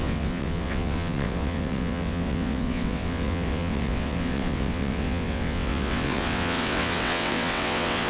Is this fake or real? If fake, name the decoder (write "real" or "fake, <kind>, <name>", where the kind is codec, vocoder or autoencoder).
fake, vocoder, WaveNeXt